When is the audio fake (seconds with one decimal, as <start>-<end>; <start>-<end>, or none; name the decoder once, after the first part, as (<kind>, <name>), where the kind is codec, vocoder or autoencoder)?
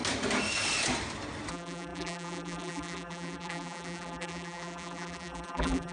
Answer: 1.5-5.9 (vocoder, BigVGAN v2)